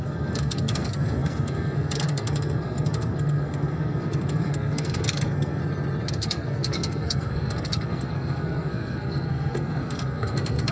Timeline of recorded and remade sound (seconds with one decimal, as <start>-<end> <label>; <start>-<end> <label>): 0.0-5.6 remade; 5.6-6.1 recorded; 6.1-10.7 remade